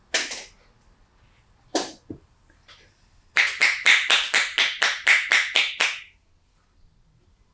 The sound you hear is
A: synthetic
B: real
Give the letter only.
B